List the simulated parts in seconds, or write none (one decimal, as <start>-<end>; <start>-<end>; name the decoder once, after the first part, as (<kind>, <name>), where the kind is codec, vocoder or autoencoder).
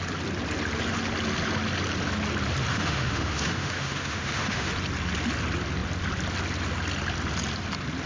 2.7-4.7 (autoencoder, DAC-VAE)